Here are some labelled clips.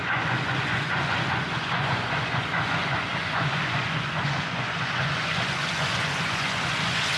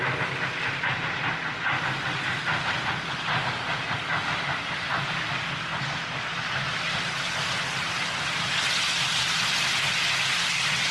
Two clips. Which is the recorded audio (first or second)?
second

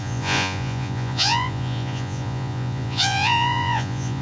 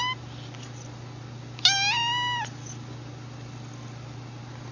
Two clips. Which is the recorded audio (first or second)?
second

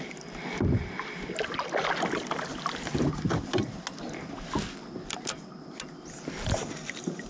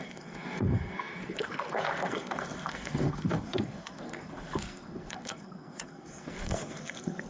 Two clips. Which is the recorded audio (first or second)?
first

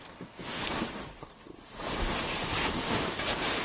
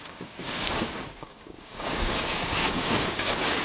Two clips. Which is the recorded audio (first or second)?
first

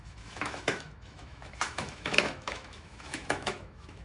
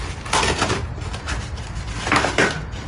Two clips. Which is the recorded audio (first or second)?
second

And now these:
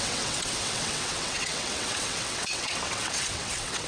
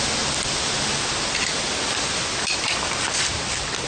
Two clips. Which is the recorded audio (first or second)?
second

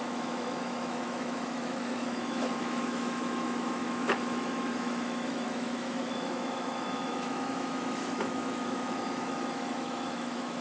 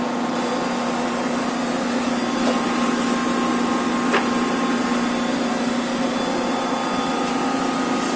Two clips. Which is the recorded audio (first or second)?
second